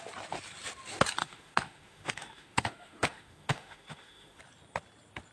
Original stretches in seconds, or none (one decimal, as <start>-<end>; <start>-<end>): 0.0-1.2; 4.4-5.3

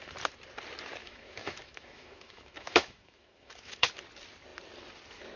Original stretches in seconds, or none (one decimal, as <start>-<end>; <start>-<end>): 0.0-1.0; 3.9-5.4

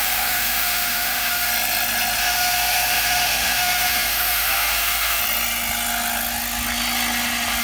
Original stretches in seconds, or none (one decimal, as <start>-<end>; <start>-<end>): 1.5-2.2; 5.2-7.6